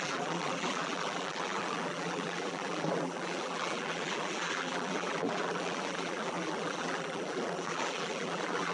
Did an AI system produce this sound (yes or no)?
yes